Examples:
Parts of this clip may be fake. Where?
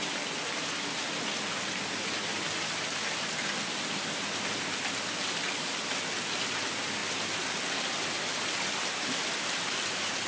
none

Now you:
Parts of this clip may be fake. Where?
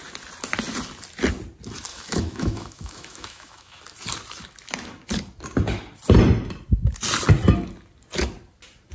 1.9-3.8 (autoencoder, DAC-VAE)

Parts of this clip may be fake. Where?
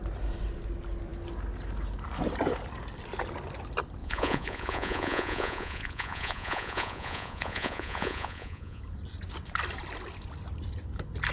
4.0-8.8 (vocoder, Vocos)